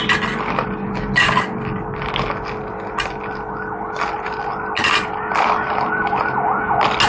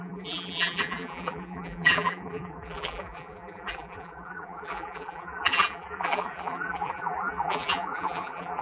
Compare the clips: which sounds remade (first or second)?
second